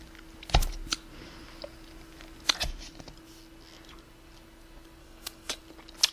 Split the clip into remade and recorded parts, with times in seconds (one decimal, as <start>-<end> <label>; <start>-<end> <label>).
0.0-5.0 recorded; 5.0-5.6 remade; 5.6-6.1 recorded